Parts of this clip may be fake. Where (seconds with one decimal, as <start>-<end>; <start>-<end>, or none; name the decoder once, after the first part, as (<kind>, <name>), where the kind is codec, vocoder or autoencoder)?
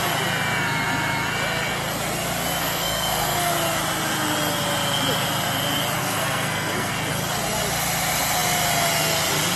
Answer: 2.6-3.5 (codec, SNAC); 6.0-6.9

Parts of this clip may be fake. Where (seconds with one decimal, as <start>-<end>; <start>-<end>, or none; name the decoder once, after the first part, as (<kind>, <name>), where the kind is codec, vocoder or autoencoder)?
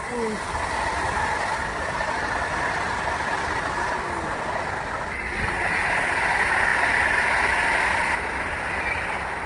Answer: none